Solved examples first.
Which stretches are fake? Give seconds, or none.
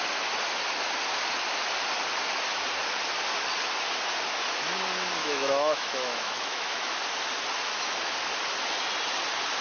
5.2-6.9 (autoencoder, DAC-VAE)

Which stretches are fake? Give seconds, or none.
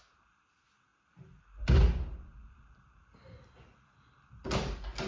none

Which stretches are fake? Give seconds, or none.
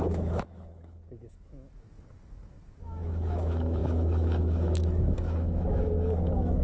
0.0-6.6 (autoencoder, DAC-VAE)